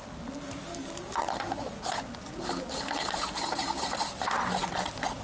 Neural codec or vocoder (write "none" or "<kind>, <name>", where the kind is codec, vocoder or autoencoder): none